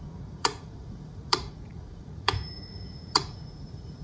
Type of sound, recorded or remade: remade